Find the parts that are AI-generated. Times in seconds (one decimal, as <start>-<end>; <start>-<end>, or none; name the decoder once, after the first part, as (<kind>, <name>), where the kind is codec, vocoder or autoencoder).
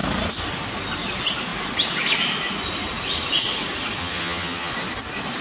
4.0-4.7 (vocoder, HiFi-GAN)